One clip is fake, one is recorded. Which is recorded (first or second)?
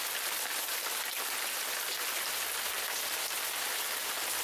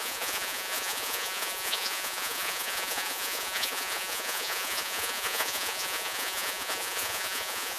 first